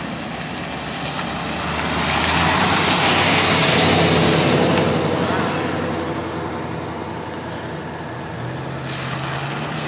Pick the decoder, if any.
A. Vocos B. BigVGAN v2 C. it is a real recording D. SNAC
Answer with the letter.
C